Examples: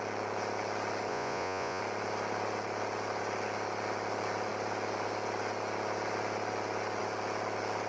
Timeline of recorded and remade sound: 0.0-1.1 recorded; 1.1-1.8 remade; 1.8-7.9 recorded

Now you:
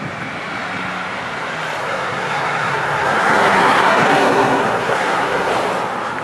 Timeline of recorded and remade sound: 0.0-1.8 recorded; 1.8-5.5 remade; 5.5-6.2 recorded

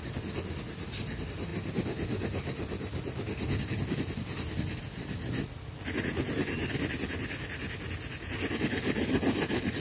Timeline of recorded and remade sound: 0.0-9.8 recorded

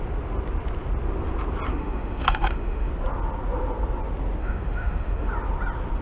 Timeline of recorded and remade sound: 0.0-1.7 recorded; 1.7-2.9 remade; 2.9-4.4 recorded; 4.4-5.3 remade; 5.3-6.0 recorded

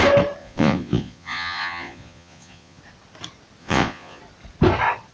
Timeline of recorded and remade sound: 0.0-0.4 recorded; 0.4-2.8 remade; 2.8-3.6 recorded; 3.6-4.2 remade; 4.2-5.1 recorded